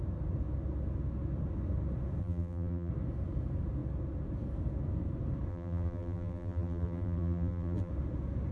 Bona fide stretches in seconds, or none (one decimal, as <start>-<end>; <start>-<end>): 0.0-2.2; 2.9-5.5; 7.9-8.5